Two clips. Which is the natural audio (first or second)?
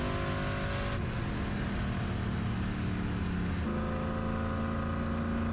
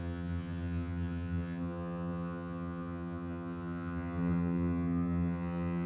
first